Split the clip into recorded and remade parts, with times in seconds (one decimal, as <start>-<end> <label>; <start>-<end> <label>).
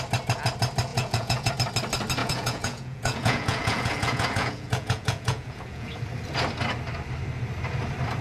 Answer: 0.0-0.9 recorded; 0.9-1.5 remade; 1.5-2.2 recorded; 2.2-6.0 remade; 6.0-8.2 recorded